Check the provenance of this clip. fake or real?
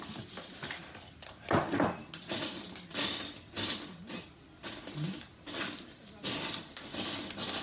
real